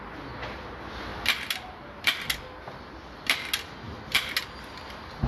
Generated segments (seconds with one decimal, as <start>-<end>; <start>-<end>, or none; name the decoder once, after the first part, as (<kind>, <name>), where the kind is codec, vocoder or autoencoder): none